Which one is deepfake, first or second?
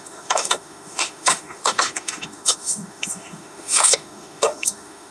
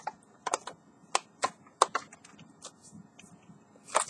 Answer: first